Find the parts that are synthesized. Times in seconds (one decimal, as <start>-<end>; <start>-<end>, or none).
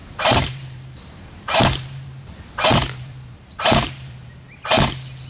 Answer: 0.0-2.3; 2.7-4.3